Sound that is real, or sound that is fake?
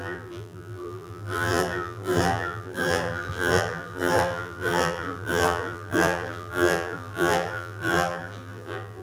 fake